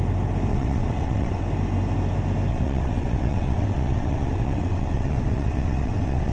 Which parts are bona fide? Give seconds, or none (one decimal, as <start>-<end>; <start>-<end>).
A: 0.0-0.5; 1.4-2.5